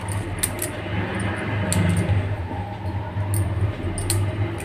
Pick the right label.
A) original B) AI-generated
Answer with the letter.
A